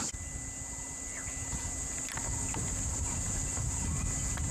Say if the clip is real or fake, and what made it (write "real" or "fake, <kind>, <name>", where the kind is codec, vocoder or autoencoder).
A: real